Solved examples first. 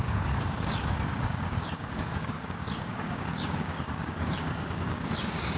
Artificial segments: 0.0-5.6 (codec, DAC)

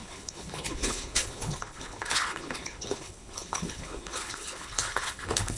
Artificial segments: 0.0-5.6 (codec, HILCodec)

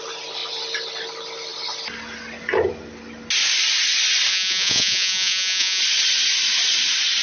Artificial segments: 4.3-5.8 (vocoder, Vocos)

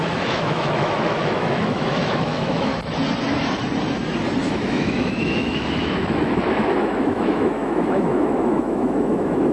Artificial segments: 0.0-2.7 (autoencoder, DAC-VAE); 4.4-9.5

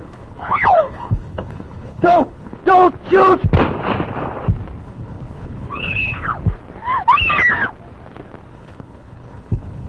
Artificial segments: 0.0-2.6 (codec, HILCodec); 4.8-6.3; 8.5-9.9